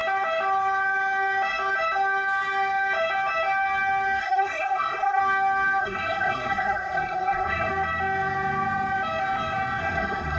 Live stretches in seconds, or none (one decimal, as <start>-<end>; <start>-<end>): 0.0-4.2; 5.2-5.8; 7.7-9.8